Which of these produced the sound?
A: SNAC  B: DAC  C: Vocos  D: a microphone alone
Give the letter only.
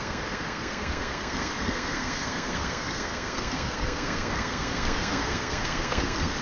A